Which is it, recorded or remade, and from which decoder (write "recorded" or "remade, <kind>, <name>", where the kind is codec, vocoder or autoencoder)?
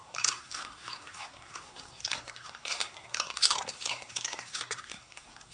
remade, codec, SNAC